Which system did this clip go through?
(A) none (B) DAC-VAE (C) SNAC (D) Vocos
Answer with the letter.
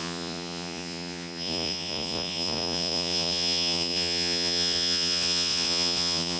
D